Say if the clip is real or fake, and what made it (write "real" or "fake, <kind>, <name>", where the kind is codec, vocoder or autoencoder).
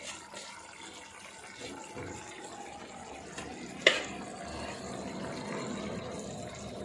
real